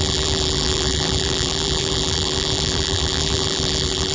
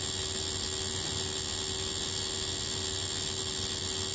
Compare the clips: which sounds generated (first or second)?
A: first